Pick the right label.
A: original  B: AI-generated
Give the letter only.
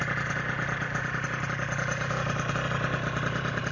A